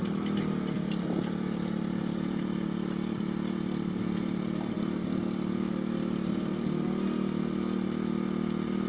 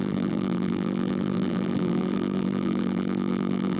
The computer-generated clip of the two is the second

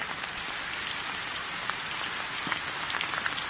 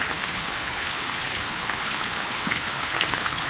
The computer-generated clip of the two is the second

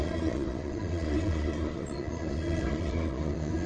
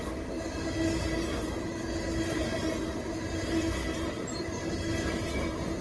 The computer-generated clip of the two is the first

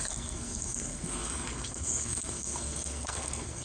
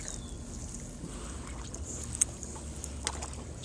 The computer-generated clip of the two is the first